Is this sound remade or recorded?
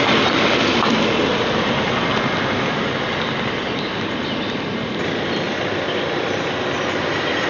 recorded